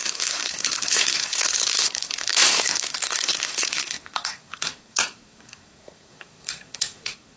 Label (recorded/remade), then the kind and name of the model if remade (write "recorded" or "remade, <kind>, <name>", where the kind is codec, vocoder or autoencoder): remade, codec, SNAC